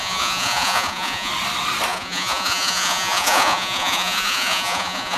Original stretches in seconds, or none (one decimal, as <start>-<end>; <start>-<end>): 1.3-1.9